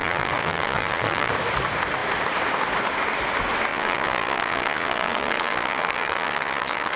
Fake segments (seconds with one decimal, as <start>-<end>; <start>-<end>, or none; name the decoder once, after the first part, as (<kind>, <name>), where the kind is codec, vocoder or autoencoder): 0.0-1.3 (vocoder, Vocos); 3.7-7.0